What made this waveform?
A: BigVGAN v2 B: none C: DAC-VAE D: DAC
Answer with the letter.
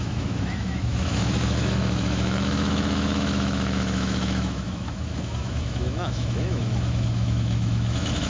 C